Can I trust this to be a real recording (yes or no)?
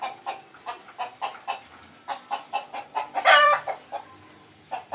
no